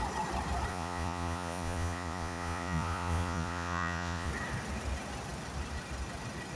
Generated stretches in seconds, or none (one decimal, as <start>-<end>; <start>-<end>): 0.7-4.3